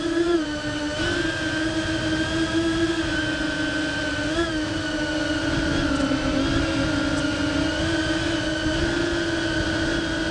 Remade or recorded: recorded